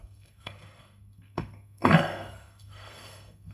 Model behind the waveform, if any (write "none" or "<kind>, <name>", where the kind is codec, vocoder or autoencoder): codec, SNAC